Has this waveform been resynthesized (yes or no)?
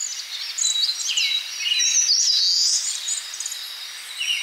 no